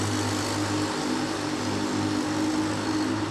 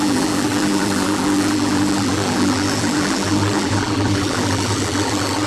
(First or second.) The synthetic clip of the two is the second